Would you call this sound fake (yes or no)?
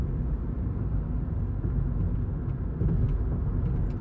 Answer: no